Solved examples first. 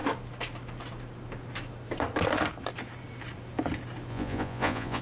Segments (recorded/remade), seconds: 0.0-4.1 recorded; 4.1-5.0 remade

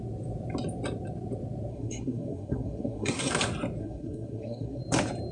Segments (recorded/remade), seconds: 0.0-1.7 recorded; 1.7-3.3 remade; 3.3-3.8 recorded; 3.8-4.8 remade; 4.8-5.3 recorded